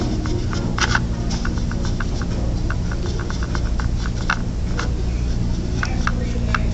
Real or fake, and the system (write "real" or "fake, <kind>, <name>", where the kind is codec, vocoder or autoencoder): real